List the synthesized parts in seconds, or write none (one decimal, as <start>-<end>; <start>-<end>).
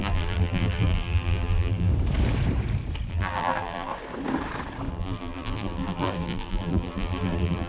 0.0-1.9; 3.1-3.9; 4.9-7.7